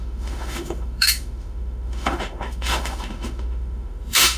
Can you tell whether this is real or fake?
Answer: fake